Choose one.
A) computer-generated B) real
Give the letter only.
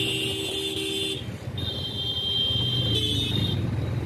B